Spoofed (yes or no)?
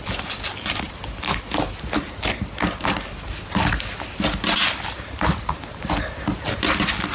no